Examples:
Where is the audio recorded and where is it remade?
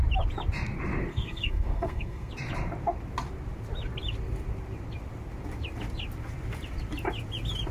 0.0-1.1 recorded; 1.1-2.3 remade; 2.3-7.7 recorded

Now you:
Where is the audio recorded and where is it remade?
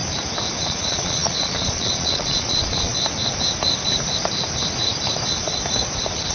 0.0-0.6 recorded; 0.6-2.9 remade; 2.9-6.3 recorded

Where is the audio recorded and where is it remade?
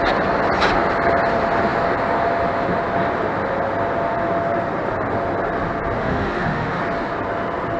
0.0-6.0 recorded; 6.0-6.8 remade; 6.8-7.8 recorded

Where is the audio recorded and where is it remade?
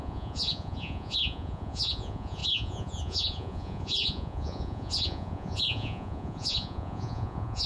0.0-7.7 remade